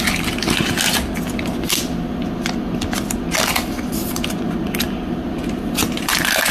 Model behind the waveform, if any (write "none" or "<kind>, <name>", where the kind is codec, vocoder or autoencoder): none